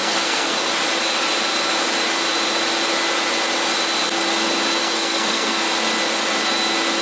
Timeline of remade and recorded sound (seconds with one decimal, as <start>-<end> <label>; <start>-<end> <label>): 0.0-0.7 remade; 0.7-4.8 recorded; 4.8-5.6 remade; 5.6-7.0 recorded